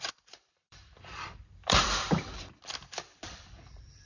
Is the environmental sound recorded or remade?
remade